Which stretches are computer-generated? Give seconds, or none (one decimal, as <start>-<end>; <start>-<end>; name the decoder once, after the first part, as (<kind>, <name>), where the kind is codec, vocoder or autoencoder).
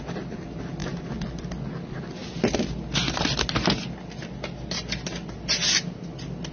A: none